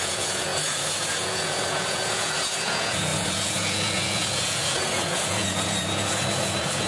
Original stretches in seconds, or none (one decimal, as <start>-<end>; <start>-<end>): none